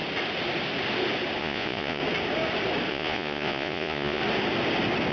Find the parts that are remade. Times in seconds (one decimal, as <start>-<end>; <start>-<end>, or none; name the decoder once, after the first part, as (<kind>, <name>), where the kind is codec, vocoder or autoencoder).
1.4-2.0 (vocoder, Vocos); 2.9-4.2